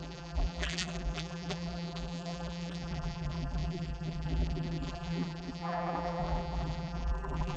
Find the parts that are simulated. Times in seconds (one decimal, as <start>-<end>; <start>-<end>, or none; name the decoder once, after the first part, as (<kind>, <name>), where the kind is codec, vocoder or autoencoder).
0.0-7.6 (vocoder, BigVGAN v2)